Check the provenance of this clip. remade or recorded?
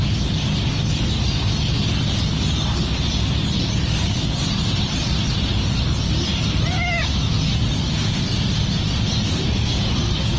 recorded